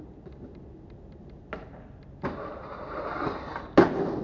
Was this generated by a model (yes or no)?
no